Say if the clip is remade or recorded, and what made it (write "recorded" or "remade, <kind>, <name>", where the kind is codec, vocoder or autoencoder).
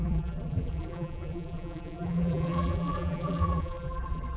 remade, vocoder, BigVGAN v2